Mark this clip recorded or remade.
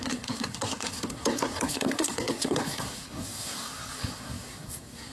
remade